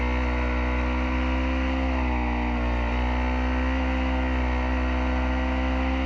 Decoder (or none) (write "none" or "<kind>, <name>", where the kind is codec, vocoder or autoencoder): none